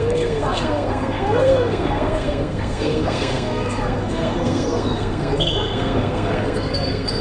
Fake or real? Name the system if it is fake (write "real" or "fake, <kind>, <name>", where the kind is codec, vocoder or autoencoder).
fake, codec, SNAC